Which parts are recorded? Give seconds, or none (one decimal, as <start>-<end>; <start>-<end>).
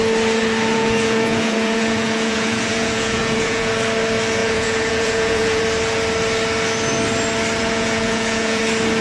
0.0-0.7; 3.7-4.4; 5.6-7.6; 8.6-9.0